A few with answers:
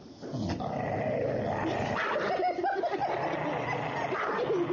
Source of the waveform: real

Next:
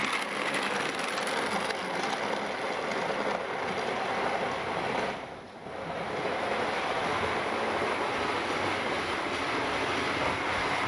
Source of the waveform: real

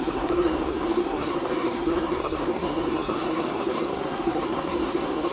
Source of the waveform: fake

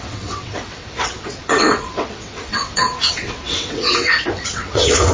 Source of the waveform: fake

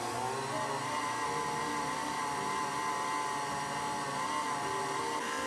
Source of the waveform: real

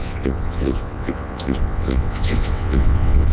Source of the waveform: fake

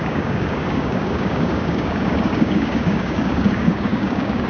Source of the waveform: fake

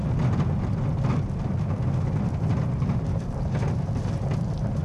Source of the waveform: real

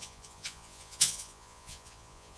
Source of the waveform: fake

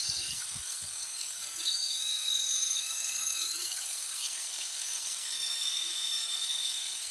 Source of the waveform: fake